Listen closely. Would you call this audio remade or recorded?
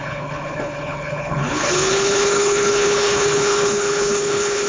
remade